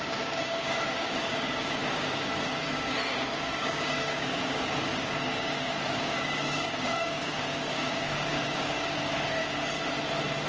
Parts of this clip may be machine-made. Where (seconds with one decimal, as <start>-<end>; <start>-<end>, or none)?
0.0-9.4